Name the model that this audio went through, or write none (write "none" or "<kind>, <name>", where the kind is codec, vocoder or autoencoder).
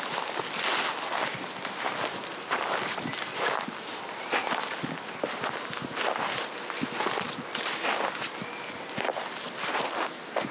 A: none